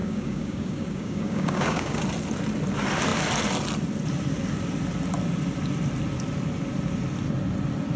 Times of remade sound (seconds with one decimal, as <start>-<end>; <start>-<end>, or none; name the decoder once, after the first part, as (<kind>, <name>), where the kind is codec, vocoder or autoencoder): 0.0-2.0 (codec, DAC)